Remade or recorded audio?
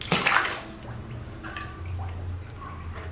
recorded